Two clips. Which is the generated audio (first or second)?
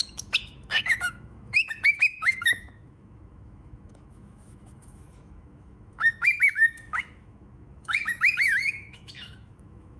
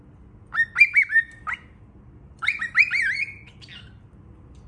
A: first